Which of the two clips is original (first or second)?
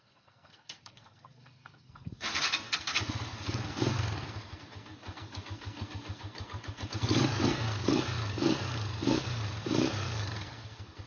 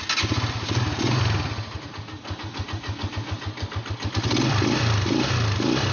second